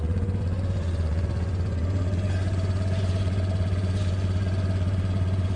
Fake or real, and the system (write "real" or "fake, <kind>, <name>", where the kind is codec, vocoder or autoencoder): fake, vocoder, Vocos